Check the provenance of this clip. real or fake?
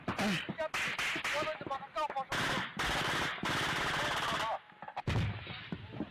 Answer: real